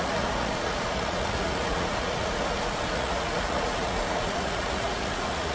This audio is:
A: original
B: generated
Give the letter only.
B